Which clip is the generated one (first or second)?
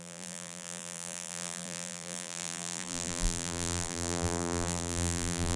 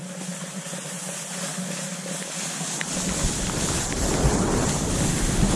first